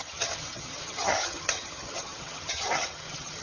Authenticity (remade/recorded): remade